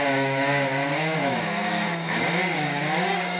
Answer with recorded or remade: remade